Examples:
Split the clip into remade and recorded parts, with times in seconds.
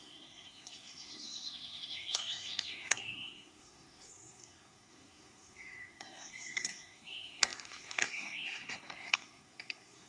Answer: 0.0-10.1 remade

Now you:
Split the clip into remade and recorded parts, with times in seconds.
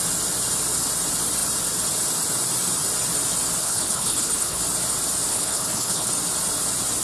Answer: 0.0-3.6 recorded; 3.6-4.6 remade; 4.6-5.3 recorded; 5.3-6.1 remade; 6.1-7.0 recorded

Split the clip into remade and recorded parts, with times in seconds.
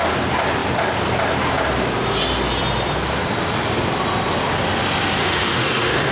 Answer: 0.0-5.2 recorded; 5.2-6.1 remade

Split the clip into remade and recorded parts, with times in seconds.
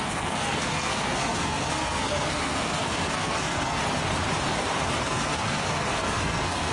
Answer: 0.0-3.8 remade; 3.8-5.0 recorded; 5.0-6.7 remade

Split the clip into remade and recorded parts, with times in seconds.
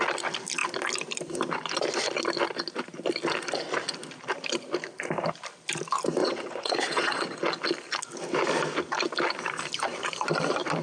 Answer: 0.0-6.2 recorded; 6.2-7.4 remade; 7.4-10.8 recorded